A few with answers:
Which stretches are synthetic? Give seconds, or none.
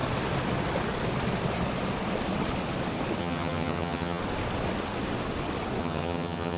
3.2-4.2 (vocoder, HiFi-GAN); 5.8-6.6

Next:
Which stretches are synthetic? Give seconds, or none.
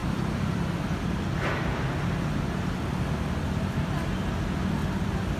0.0-1.2 (vocoder, BigVGAN v2); 4.8-5.4